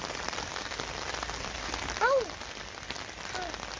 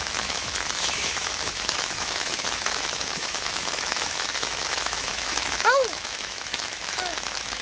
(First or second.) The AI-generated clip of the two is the second